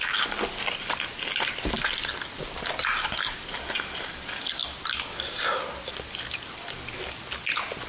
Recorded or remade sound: recorded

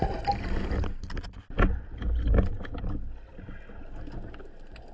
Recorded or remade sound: recorded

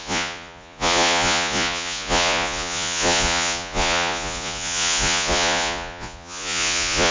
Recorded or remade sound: remade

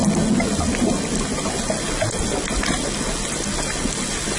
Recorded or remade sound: recorded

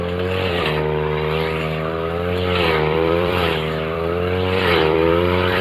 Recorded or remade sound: remade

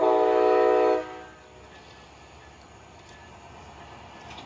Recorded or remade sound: recorded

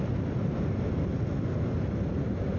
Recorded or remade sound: recorded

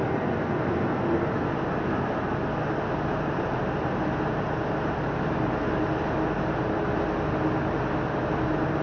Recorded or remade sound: recorded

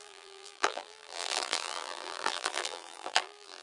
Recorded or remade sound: remade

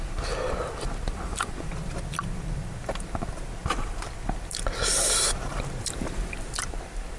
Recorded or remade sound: remade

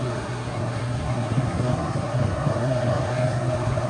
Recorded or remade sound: remade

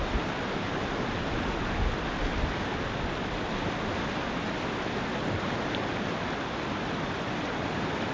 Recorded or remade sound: recorded